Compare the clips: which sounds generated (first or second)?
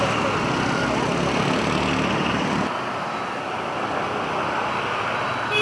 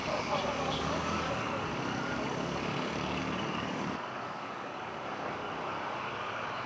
second